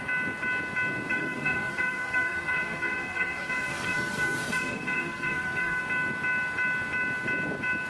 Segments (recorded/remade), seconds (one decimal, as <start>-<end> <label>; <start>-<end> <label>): 0.0-1.1 recorded; 1.1-5.8 remade; 5.8-7.9 recorded